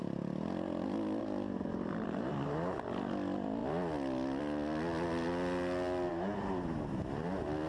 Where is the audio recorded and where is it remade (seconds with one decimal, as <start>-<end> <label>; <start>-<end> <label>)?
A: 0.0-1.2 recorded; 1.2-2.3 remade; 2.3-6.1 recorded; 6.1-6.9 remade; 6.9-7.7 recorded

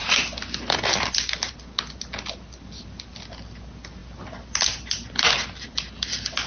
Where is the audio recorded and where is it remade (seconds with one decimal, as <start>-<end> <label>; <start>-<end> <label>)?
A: 0.0-6.5 recorded

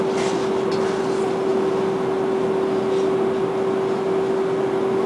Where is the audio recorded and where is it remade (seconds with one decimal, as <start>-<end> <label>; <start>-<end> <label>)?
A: 0.0-5.1 recorded

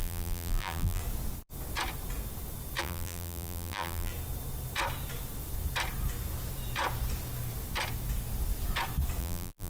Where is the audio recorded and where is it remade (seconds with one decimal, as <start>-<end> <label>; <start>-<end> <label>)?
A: 0.0-1.0 remade; 1.0-2.8 recorded; 2.8-4.1 remade; 4.1-9.2 recorded; 9.2-9.7 remade

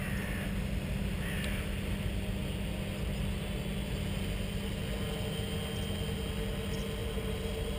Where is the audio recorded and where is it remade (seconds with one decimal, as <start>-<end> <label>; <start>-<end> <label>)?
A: 0.0-7.0 recorded; 7.0-7.8 remade

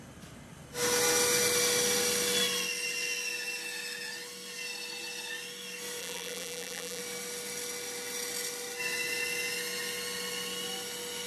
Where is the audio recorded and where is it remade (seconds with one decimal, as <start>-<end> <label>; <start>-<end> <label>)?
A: 0.0-6.0 recorded; 6.0-7.0 remade; 7.0-11.3 recorded

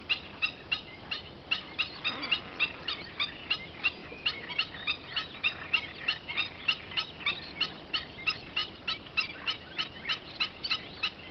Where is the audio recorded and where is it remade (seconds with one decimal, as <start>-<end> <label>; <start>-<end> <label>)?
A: 0.0-11.3 remade